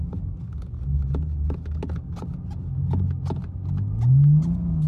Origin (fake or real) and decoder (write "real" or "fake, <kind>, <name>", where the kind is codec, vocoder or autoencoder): real